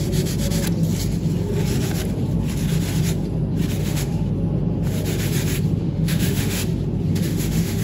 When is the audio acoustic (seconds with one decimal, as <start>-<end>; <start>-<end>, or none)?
0.0-3.8; 4.3-5.8; 6.6-7.1